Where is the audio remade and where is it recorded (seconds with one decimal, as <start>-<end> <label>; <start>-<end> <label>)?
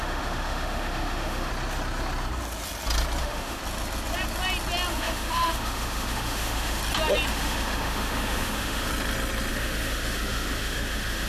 0.0-1.5 remade; 1.5-3.2 recorded; 3.2-3.6 remade; 3.6-4.9 recorded; 4.9-6.8 remade; 6.8-7.3 recorded; 7.3-8.9 remade; 8.9-9.5 recorded; 9.5-11.3 remade